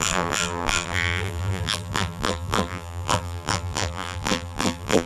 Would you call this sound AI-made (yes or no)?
yes